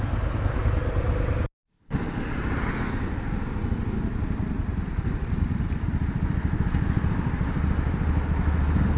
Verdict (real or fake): real